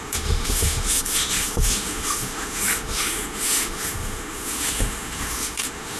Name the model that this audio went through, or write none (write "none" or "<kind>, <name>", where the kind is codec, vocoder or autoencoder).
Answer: autoencoder, DAC-VAE